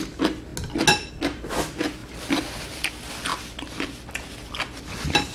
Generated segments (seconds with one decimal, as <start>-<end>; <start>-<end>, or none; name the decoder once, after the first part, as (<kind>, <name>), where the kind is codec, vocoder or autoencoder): 2.0-2.9 (vocoder, BigVGAN v2); 3.3-4.1